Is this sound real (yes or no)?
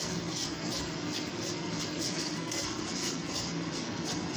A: no